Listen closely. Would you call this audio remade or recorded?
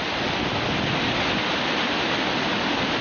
recorded